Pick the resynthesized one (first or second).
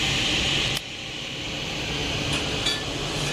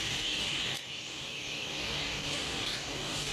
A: second